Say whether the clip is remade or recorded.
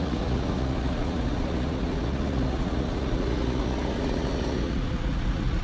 remade